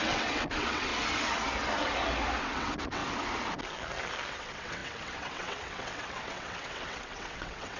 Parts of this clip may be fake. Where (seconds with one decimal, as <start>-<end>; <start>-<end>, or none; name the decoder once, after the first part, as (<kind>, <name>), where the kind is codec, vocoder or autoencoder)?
0.0-0.9 (vocoder, WaveNeXt); 2.4-3.0; 4.3-7.8

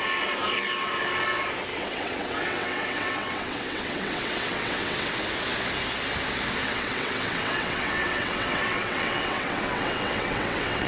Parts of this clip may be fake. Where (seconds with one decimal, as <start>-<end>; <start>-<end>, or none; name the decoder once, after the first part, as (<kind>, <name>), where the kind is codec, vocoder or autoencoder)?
1.7-5.1 (vocoder, WaveNeXt); 6.6-10.9

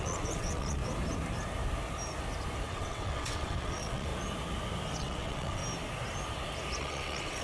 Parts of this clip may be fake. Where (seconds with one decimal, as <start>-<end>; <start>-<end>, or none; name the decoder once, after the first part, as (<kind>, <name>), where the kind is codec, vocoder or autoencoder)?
0.0-0.8 (vocoder, WaveNeXt); 2.7-4.1; 5.0-5.6; 6.8-7.4

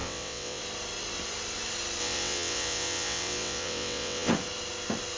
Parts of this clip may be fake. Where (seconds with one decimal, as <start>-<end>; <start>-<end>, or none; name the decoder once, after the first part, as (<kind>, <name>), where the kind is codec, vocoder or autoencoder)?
0.0-0.6 (vocoder, WaveNeXt); 2.0-4.3

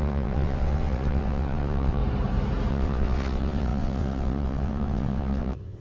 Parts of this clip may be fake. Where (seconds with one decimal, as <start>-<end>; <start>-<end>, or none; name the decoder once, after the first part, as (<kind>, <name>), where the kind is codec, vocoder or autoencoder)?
0.0-2.0 (vocoder, WaveNeXt); 2.7-5.8

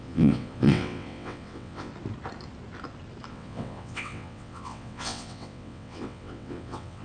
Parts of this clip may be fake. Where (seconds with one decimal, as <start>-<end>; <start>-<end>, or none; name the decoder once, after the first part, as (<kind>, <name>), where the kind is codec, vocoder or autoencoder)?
0.0-1.9 (vocoder, WaveNeXt); 3.3-7.0

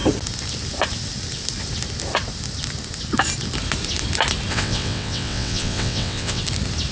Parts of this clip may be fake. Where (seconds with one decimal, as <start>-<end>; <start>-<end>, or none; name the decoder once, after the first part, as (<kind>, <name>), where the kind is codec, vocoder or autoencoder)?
4.5-6.4 (vocoder, WaveNeXt)

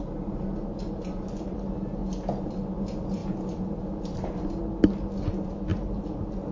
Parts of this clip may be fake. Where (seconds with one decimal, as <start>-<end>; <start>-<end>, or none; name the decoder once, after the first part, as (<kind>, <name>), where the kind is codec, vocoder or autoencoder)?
none